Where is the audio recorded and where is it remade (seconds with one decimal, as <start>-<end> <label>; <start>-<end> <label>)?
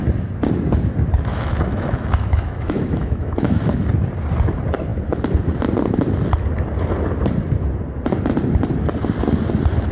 0.0-1.3 recorded; 1.3-3.8 remade; 3.8-9.9 recorded